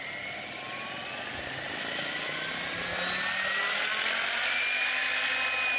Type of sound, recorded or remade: recorded